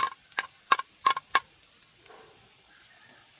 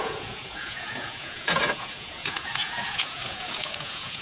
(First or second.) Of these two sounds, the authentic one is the first